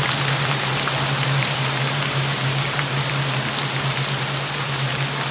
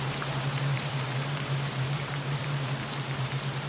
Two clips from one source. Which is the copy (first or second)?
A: second